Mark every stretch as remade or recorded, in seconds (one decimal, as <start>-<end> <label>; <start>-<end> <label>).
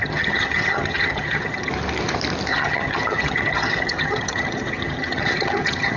0.0-1.7 remade; 1.7-2.5 recorded; 2.5-6.0 remade